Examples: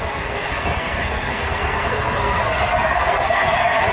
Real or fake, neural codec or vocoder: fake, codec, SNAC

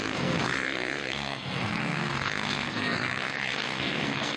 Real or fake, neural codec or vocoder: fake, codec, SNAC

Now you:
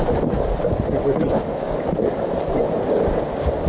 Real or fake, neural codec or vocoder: real